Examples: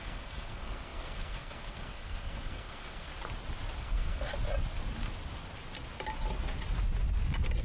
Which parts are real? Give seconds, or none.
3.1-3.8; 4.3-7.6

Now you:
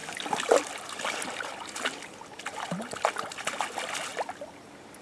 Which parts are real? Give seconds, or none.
0.0-5.0

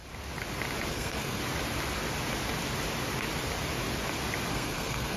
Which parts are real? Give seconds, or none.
0.0-0.9; 1.4-4.5

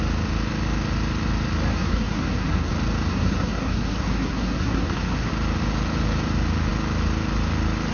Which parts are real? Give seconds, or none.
0.0-1.7; 2.7-3.1; 5.3-7.9

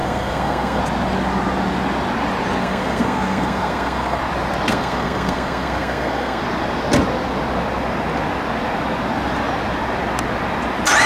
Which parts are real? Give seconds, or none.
0.8-2.6; 4.2-4.7; 6.4-11.1

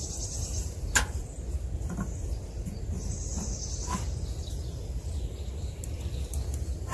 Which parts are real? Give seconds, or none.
0.0-6.9